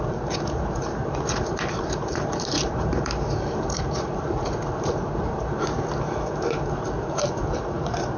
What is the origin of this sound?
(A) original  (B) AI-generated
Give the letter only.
B